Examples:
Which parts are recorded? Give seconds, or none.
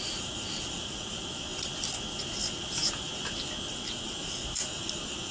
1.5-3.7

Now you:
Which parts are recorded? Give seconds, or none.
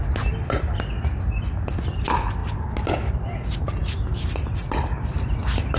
0.0-5.8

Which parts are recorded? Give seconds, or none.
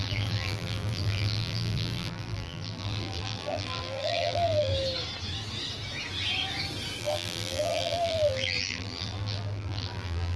4.7-7.0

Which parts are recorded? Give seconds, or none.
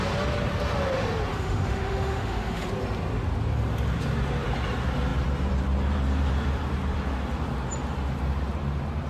0.0-1.3; 2.7-9.1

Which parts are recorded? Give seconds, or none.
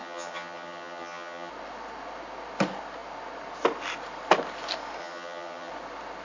1.5-5.0; 5.7-6.2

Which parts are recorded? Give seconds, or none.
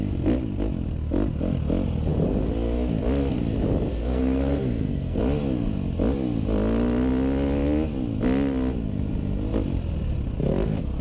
0.0-3.9; 5.2-11.0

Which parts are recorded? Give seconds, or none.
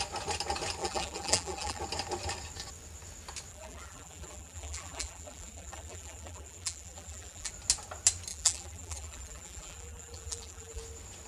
0.0-0.8; 1.8-3.5; 7.5-8.3; 10.8-11.3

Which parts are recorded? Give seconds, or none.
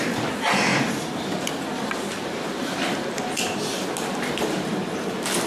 0.0-0.7; 3.0-5.5